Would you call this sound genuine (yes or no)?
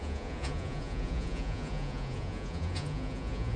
no